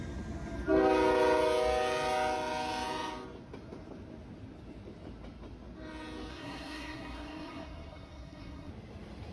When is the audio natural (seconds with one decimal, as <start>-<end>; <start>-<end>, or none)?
0.0-6.3; 8.7-9.3